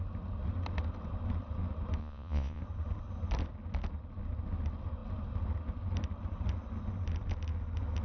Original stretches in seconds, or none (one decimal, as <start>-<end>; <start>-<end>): 0.0-2.0; 2.6-8.0

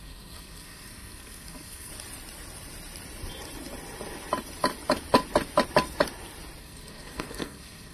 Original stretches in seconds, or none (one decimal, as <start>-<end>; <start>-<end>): 1.9-6.6

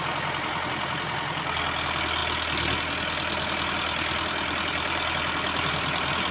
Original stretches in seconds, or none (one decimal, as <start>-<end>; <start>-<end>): 0.0-6.3

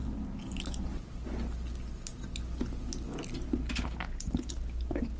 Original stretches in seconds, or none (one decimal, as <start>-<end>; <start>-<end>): 0.0-5.2